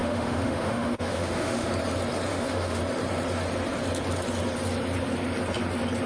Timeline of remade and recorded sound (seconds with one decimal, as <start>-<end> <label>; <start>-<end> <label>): 0.0-1.7 remade; 1.7-2.3 recorded; 2.3-2.8 remade; 2.8-6.1 recorded